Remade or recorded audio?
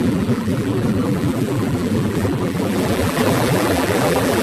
remade